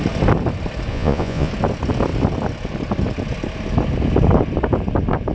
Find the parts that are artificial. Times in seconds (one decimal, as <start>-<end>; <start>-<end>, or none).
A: 0.9-1.5